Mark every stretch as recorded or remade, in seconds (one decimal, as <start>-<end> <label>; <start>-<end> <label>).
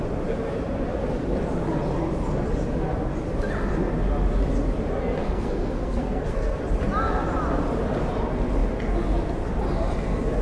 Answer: 0.0-5.2 recorded; 5.2-6.6 remade; 6.6-10.4 recorded